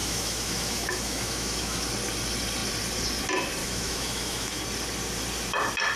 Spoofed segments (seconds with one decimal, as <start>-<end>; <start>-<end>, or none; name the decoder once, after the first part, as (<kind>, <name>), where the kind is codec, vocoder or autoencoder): 0.0-1.9 (autoencoder, DAC-VAE); 3.6-4.6

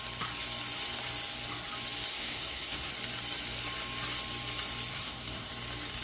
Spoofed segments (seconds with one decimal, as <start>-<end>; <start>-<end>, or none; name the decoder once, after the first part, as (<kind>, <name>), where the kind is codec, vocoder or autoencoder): 2.1-2.9 (codec, SNAC); 4.9-5.5

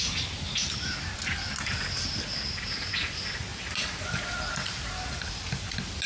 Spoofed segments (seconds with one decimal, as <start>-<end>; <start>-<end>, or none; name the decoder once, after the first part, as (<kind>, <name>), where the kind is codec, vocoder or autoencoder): none

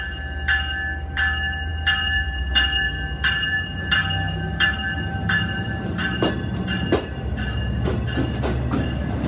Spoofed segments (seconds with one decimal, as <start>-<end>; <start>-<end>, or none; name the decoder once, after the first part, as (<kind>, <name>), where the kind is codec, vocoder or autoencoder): none

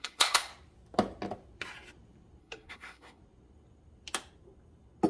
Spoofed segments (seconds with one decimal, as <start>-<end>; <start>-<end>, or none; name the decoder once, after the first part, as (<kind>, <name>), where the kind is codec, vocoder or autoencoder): 0.0-0.5 (codec, SNAC); 2.4-3.2

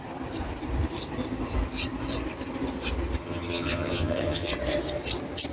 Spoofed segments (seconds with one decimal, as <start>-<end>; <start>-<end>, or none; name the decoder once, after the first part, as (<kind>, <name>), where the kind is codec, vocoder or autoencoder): 3.2-4.5 (vocoder, HiFi-GAN)

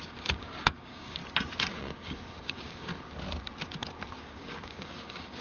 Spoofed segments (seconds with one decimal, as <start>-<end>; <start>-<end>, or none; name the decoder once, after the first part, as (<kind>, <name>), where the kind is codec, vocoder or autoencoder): 0.0-1.2 (codec, DAC); 1.7-2.9; 4.2-5.4